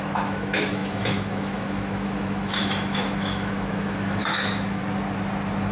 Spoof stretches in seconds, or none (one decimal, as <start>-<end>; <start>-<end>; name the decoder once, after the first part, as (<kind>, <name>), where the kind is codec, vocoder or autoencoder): 0.0-4.8 (autoencoder, DAC-VAE)